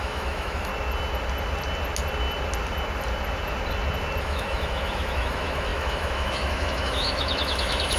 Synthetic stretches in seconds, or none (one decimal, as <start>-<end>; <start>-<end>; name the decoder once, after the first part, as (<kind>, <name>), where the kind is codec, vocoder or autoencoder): 0.0-0.7 (autoencoder, DAC-VAE); 4.2-8.0